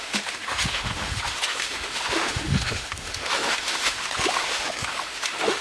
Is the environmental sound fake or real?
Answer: fake